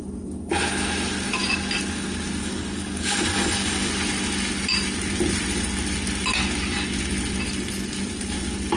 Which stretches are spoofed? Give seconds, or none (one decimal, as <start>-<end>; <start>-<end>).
2.4-3.9